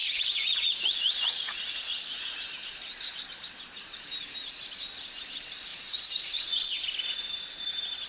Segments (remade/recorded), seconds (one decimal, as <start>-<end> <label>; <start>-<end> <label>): 0.0-2.4 remade; 2.4-5.7 recorded; 5.7-6.7 remade; 6.7-8.1 recorded